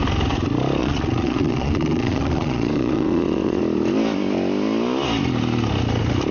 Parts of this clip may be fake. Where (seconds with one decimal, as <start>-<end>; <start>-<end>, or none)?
0.8-3.6